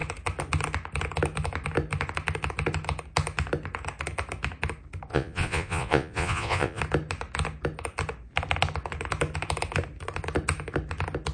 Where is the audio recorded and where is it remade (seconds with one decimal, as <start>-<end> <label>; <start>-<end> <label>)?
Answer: 0.0-5.1 recorded; 5.1-6.8 remade; 6.8-11.3 recorded